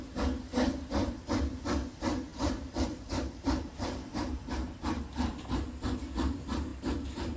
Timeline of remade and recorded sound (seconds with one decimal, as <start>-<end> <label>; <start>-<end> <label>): 0.0-2.3 recorded; 2.3-5.3 remade; 5.3-7.4 recorded